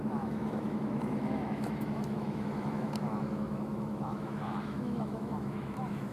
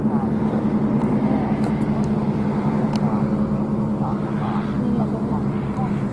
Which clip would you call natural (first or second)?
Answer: second